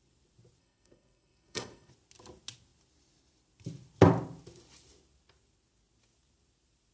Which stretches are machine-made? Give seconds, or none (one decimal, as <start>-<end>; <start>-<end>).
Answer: 0.6-1.9